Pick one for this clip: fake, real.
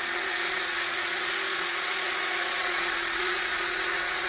fake